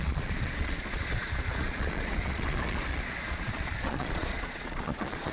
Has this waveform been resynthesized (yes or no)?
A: yes